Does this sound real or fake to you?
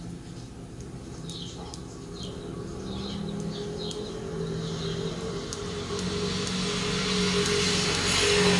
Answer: real